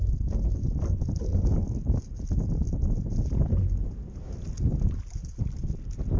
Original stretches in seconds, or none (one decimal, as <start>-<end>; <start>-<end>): 0.0-6.2